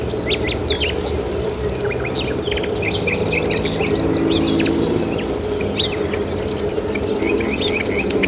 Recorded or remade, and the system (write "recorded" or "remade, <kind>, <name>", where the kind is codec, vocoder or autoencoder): recorded